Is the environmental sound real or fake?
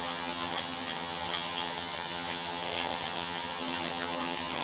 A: fake